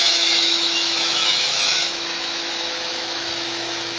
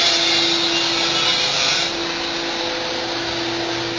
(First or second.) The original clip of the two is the second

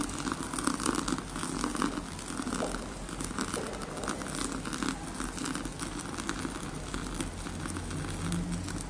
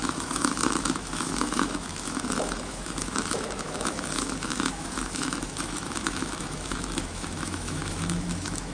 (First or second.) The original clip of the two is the first